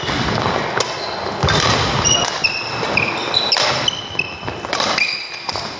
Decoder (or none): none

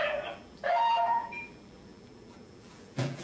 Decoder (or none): vocoder, BigVGAN v2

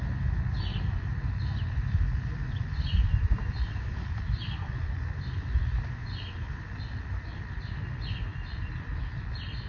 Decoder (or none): vocoder, BigVGAN v2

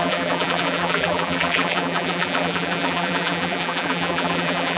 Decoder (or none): vocoder, BigVGAN v2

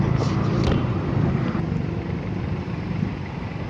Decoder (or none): vocoder, BigVGAN v2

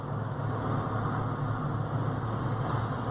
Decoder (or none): none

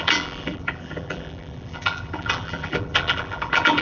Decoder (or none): vocoder, BigVGAN v2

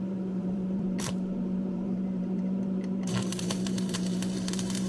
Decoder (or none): vocoder, BigVGAN v2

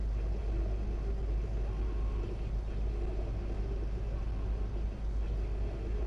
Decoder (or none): none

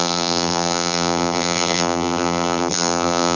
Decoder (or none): vocoder, BigVGAN v2